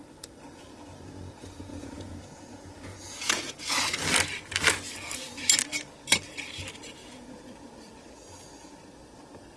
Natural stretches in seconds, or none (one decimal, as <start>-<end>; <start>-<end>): 0.0-1.7; 3.6-7.0; 7.5-9.6